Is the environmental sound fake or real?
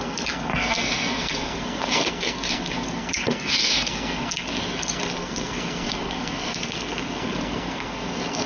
fake